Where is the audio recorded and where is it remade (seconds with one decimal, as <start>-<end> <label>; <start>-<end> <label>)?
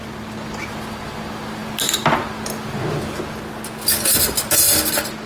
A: 0.0-5.3 recorded